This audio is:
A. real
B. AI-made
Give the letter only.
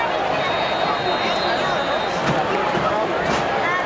A